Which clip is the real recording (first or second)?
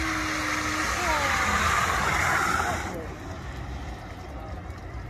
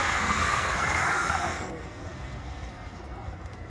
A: first